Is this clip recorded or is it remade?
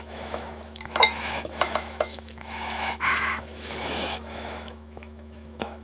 remade